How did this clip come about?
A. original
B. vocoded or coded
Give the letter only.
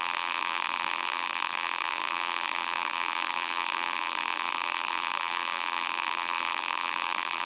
B